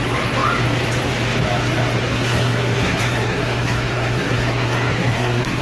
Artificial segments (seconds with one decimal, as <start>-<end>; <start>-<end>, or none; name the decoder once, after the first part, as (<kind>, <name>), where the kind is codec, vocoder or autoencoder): 2.0-5.6 (codec, SNAC)